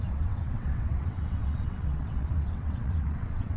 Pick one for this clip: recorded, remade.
remade